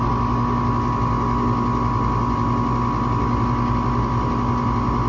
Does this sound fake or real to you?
real